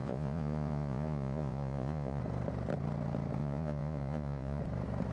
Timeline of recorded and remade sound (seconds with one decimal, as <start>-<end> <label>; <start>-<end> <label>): 0.0-2.2 remade; 2.2-3.4 recorded; 3.4-4.6 remade; 4.6-5.1 recorded